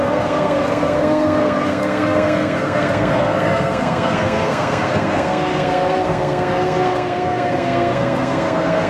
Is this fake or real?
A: fake